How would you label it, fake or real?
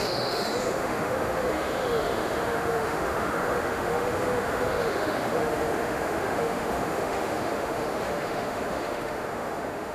fake